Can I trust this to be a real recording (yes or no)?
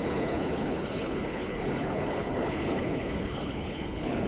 no